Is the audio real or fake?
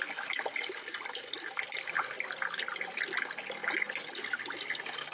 real